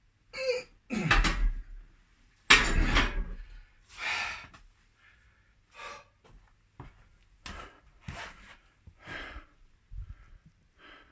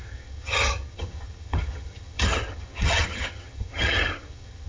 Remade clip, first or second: second